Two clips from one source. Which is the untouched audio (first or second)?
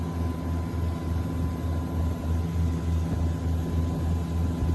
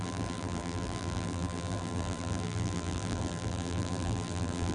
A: first